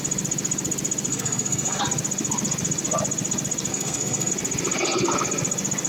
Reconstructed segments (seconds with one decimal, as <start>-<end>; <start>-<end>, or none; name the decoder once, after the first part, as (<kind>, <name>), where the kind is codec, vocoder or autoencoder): 1.1-1.8 (codec, SNAC); 3.7-4.3